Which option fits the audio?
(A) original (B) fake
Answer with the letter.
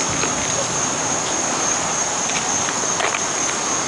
A